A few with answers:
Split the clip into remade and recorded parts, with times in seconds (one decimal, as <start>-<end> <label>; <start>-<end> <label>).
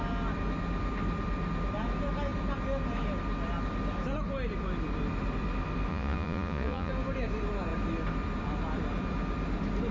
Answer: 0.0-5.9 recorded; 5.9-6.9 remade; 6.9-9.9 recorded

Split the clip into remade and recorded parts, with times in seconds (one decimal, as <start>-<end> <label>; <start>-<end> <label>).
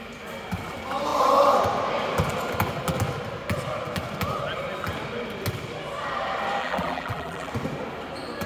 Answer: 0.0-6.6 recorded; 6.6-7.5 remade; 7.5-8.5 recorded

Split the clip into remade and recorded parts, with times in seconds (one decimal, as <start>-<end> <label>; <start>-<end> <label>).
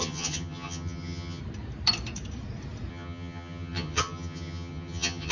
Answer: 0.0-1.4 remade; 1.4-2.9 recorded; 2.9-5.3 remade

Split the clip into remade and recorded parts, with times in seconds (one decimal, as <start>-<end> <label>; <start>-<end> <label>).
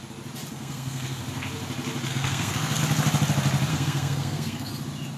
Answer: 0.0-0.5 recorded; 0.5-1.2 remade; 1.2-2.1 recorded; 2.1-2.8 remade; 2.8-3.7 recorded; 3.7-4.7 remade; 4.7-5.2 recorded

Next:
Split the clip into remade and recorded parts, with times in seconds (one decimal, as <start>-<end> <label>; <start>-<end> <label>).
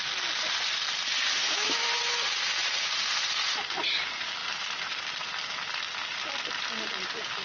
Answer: 0.0-1.4 recorded; 1.4-2.0 remade; 2.0-7.4 recorded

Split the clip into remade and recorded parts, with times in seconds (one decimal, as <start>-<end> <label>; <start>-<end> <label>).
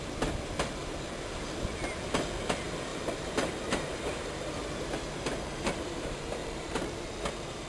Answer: 0.0-2.9 recorded; 2.9-6.0 remade; 6.0-6.4 recorded; 6.4-7.7 remade